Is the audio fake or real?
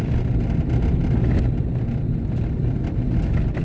real